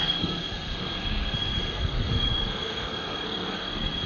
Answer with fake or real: fake